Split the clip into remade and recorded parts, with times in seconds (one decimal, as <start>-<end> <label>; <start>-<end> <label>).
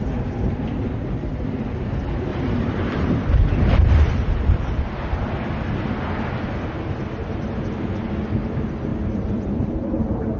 0.0-2.3 recorded; 2.3-4.0 remade; 4.0-8.9 recorded; 8.9-9.7 remade; 9.7-10.4 recorded